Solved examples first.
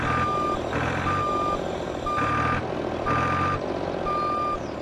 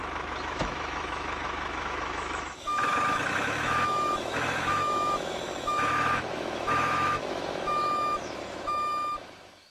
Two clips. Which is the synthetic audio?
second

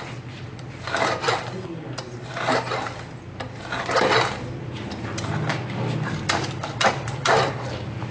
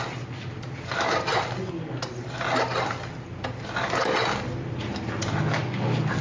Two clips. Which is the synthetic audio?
first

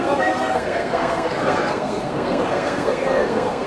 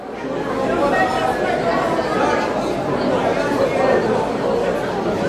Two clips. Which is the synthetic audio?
first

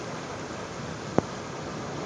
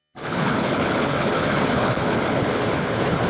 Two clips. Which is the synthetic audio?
second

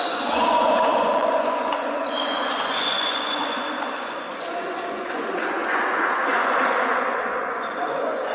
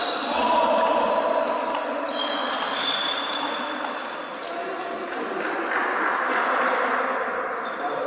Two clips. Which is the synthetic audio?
first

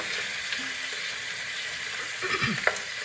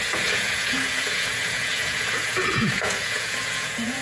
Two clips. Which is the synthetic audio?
second